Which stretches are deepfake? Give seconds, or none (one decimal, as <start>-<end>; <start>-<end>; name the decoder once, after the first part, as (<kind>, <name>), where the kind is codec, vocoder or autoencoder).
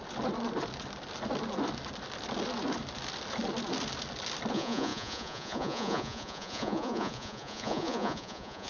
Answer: 4.5-8.7 (vocoder, Vocos)